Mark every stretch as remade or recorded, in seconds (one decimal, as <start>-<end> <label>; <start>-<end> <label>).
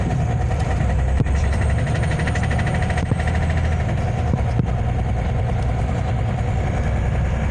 0.0-3.1 remade; 3.1-7.5 recorded